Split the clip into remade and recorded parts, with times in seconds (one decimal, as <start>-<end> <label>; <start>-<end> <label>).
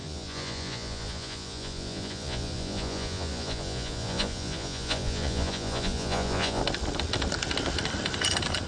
0.0-6.6 remade; 6.6-8.7 recorded